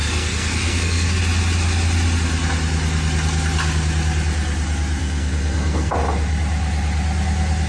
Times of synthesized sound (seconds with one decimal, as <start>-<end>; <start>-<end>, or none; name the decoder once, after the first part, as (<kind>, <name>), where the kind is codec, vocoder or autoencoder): 0.0-1.2 (codec, SNAC); 5.0-5.9